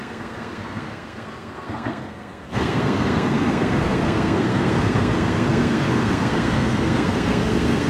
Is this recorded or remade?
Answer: remade